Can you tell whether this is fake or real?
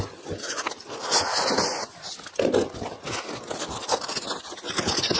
real